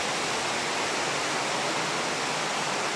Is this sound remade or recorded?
recorded